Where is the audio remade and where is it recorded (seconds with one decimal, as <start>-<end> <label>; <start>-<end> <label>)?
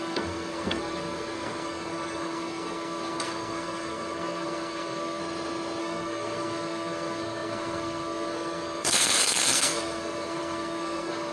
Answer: 0.0-5.2 remade; 5.2-5.8 recorded; 5.8-11.3 remade